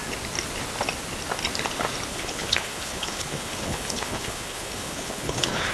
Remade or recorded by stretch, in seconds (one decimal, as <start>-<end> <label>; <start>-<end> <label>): 0.0-2.1 recorded; 2.1-5.7 remade